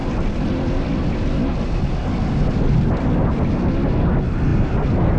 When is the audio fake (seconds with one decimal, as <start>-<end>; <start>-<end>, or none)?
none